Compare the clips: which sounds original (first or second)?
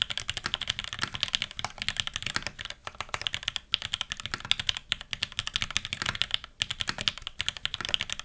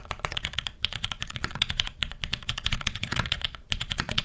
first